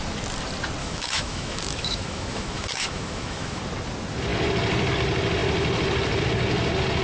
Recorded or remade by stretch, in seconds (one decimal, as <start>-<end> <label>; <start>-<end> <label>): 0.0-0.8 recorded; 0.8-3.6 remade; 3.6-7.0 recorded

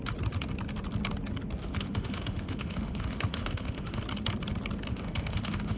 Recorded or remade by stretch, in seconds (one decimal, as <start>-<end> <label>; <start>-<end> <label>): 0.0-1.6 recorded; 1.6-4.0 remade; 4.0-4.9 recorded; 4.9-5.8 remade

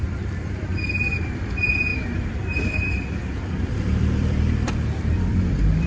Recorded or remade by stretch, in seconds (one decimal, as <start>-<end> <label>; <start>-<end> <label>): 0.0-1.9 remade; 1.9-2.4 recorded; 2.4-5.9 remade

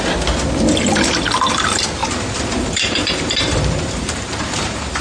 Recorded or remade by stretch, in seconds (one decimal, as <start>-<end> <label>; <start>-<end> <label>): 0.0-2.0 recorded; 2.0-5.0 remade

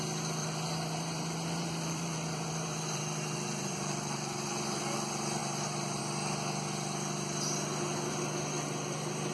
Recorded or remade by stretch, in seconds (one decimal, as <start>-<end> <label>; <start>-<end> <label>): 0.0-0.4 recorded; 0.4-4.8 remade; 4.8-5.4 recorded; 5.4-6.0 remade; 6.0-9.3 recorded